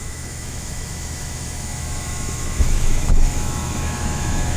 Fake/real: fake